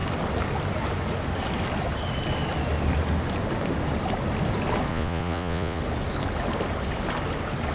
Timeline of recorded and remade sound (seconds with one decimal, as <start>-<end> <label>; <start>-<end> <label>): 0.0-4.9 recorded; 4.9-5.8 remade; 5.8-7.7 recorded